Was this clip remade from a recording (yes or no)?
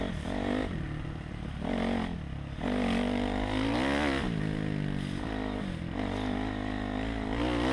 no